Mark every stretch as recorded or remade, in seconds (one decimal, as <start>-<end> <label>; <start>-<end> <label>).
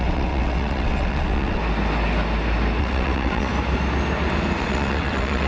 0.0-1.6 remade; 1.6-2.8 recorded; 2.8-3.5 remade; 3.5-4.6 recorded; 4.6-5.5 remade